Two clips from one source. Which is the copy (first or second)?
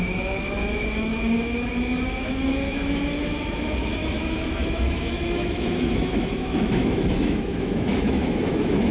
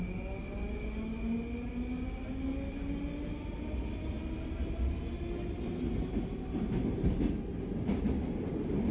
first